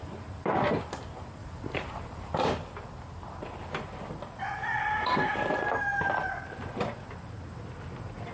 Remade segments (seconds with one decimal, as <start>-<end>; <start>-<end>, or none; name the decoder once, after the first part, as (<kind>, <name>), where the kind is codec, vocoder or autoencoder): 1.4-2.4 (vocoder, BigVGAN v2)